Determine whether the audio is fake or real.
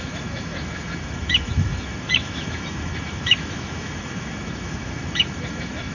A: fake